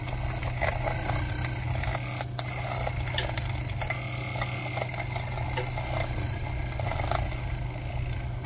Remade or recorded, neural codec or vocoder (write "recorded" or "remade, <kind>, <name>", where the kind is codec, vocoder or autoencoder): recorded